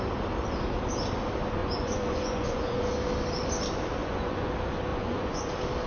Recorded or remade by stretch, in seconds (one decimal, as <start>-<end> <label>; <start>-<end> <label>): 0.0-1.6 recorded; 1.6-2.9 remade; 2.9-4.0 recorded; 4.0-4.5 remade; 4.5-4.9 recorded; 4.9-5.5 remade; 5.5-5.9 recorded